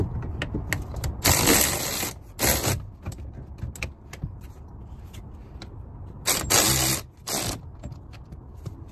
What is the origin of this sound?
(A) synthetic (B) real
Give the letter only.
B